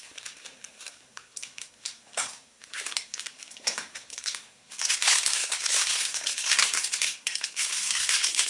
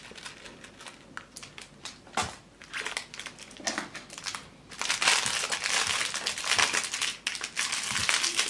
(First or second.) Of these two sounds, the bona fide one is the second